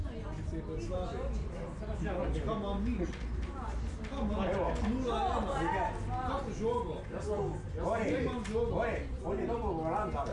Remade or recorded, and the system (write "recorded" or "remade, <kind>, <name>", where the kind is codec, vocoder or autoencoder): recorded